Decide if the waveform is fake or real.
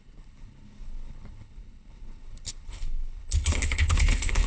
fake